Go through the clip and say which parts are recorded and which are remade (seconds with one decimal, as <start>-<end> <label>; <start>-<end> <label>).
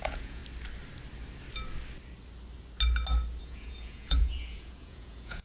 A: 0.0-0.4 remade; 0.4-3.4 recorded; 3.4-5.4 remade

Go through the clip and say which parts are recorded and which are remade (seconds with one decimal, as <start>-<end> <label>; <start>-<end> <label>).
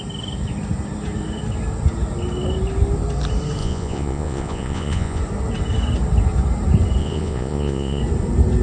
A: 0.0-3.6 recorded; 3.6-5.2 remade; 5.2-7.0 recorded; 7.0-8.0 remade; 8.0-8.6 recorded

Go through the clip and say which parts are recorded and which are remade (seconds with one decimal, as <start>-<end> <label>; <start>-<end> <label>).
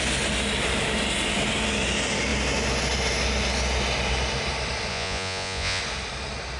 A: 0.0-4.9 recorded; 4.9-5.8 remade; 5.8-6.6 recorded